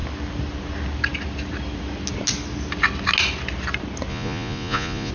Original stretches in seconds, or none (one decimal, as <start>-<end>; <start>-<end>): 0.0-4.1